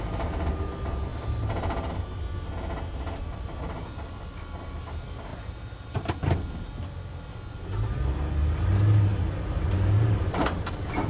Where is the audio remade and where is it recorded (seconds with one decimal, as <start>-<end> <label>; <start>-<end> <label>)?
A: 0.0-1.1 recorded; 1.1-1.9 remade; 1.9-5.3 recorded; 5.3-6.2 remade; 6.2-9.1 recorded; 9.1-10.7 remade; 10.7-11.1 recorded